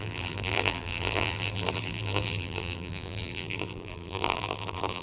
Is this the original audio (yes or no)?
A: no